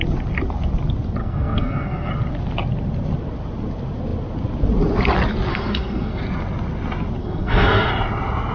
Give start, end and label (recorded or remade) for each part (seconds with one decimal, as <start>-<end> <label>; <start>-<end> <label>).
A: 0.0-1.2 recorded; 1.2-2.1 remade; 2.1-5.5 recorded; 5.5-6.2 remade; 6.2-7.2 recorded; 7.2-7.9 remade; 7.9-8.5 recorded